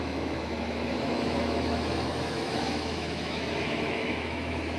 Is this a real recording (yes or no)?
no